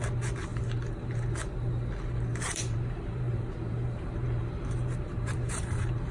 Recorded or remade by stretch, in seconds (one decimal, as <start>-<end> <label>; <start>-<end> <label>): 0.0-0.5 recorded; 0.5-1.7 remade; 1.7-2.3 recorded; 2.3-6.1 remade